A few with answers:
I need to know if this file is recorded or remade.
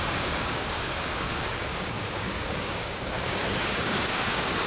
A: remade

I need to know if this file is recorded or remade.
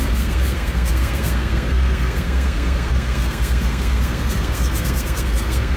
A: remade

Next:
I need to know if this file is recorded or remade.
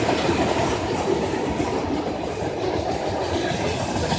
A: recorded